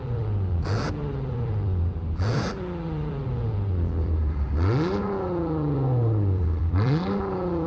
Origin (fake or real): fake